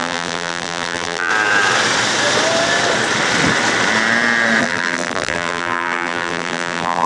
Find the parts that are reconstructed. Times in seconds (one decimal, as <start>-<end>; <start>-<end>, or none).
0.0-1.3; 4.6-7.1

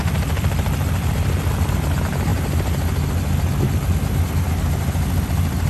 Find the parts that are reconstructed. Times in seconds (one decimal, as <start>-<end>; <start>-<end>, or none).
none

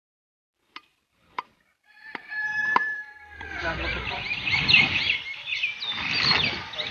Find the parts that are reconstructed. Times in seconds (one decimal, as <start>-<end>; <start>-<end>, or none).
0.9-2.2; 2.6-4.8

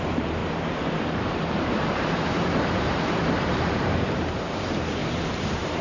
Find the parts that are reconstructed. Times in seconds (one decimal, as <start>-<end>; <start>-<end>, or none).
0.0-5.8

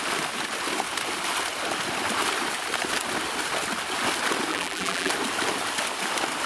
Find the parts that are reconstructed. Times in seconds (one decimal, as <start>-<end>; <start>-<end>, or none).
4.5-5.1

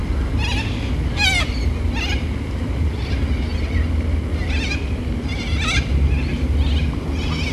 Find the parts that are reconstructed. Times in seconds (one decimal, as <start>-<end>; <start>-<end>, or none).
none

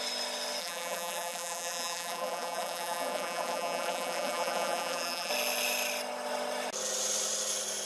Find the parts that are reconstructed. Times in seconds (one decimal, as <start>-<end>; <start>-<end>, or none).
0.6-5.3